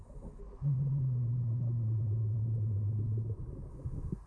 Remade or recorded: recorded